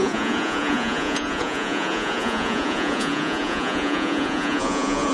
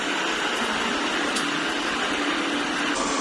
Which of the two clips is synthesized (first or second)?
first